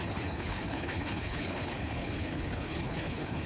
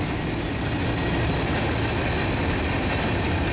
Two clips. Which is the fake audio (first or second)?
first